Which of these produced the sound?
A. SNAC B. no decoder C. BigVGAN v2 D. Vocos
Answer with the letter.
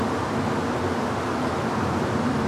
B